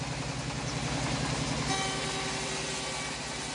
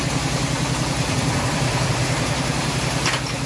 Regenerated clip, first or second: second